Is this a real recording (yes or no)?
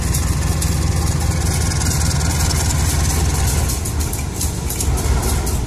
yes